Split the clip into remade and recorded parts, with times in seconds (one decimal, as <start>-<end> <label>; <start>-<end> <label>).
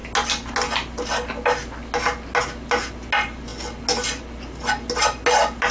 0.0-5.7 recorded